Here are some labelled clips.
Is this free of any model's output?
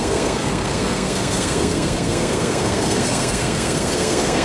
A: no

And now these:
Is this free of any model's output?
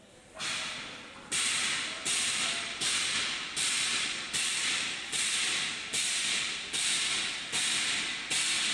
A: no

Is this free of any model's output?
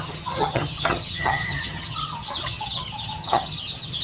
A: no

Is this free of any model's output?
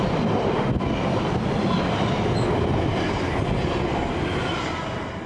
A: yes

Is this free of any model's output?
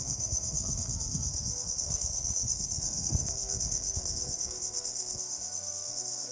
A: no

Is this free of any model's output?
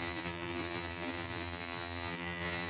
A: no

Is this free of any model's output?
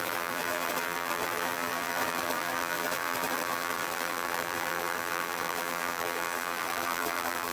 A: no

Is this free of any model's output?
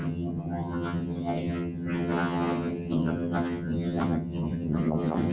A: no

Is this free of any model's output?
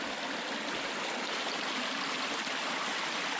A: yes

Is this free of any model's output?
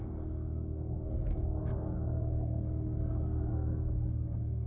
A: no